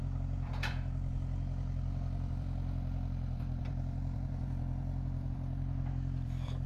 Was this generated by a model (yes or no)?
yes